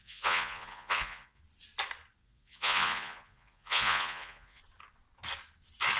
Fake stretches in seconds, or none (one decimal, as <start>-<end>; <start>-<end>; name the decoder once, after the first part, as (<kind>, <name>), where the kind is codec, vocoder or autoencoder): 0.0-1.4 (vocoder, Vocos); 2.2-4.6